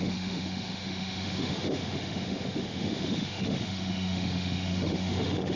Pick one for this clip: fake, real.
fake